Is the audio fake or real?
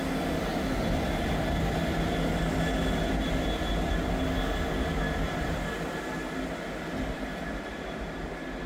real